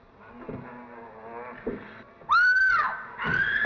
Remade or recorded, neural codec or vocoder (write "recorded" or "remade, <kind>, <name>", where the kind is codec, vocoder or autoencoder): recorded